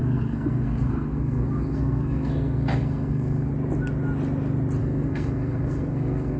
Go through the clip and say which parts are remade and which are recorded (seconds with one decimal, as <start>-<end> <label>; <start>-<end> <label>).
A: 0.0-3.5 remade; 3.5-4.8 recorded; 4.8-6.4 remade